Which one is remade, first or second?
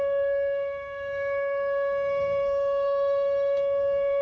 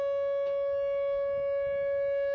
first